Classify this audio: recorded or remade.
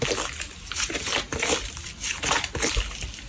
recorded